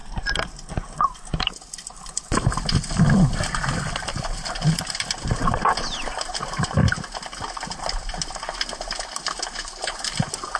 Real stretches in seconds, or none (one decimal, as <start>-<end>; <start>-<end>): 0.0-10.6